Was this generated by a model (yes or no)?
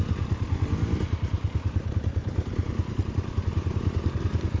no